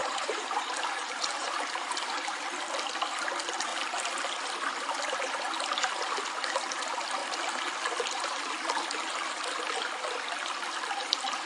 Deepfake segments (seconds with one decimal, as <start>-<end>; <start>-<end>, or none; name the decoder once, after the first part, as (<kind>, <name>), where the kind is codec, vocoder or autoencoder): 0.0-2.4 (vocoder, BigVGAN v2)